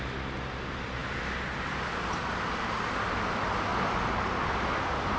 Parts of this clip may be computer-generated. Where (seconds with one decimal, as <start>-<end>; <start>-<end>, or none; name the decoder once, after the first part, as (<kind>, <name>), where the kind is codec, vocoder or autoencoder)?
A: 1.0-2.3 (vocoder, BigVGAN v2)